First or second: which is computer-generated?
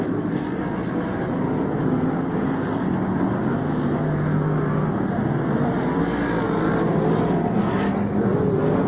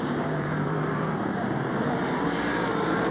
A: second